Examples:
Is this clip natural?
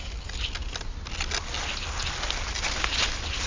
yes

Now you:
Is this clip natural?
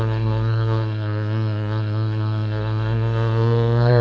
no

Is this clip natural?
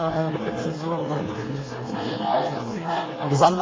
no